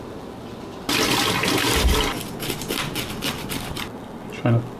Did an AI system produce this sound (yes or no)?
no